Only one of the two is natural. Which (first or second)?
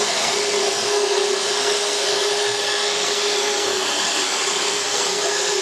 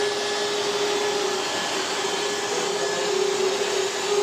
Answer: second